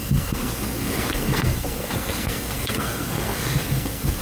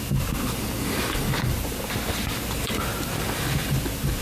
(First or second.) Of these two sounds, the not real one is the first